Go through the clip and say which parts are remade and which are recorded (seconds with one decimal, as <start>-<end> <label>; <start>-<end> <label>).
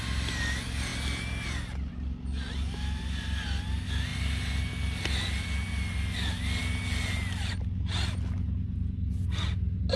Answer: 0.0-10.0 recorded